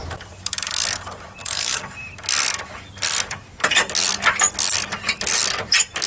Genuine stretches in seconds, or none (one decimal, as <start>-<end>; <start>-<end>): 3.7-6.1